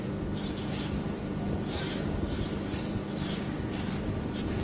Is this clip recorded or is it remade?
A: recorded